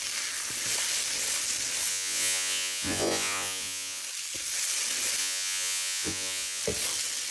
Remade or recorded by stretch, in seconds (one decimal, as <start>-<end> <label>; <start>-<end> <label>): 0.0-1.9 recorded; 1.9-4.0 remade; 4.0-5.2 recorded; 5.2-6.6 remade; 6.6-7.3 recorded